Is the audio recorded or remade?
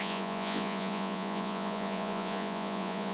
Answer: remade